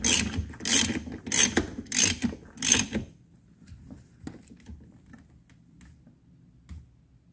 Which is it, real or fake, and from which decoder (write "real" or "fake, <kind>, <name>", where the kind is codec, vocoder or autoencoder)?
real